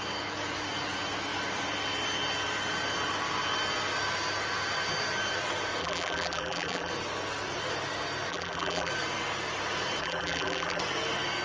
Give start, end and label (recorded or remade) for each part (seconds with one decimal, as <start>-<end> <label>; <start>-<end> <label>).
0.0-5.8 recorded; 5.8-6.9 remade; 6.9-8.3 recorded; 8.3-8.9 remade; 8.9-10.0 recorded; 10.0-10.8 remade; 10.8-11.4 recorded